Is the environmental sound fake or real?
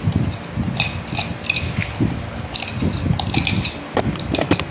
real